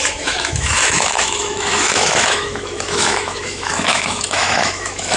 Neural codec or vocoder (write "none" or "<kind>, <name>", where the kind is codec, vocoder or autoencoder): autoencoder, DAC-VAE